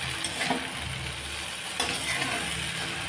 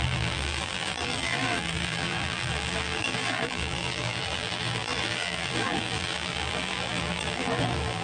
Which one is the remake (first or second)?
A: second